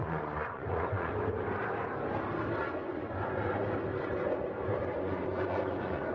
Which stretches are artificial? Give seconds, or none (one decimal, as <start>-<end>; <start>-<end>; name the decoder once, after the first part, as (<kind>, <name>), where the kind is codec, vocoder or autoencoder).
0.0-1.1 (vocoder, Vocos); 2.6-3.6; 5.0-6.1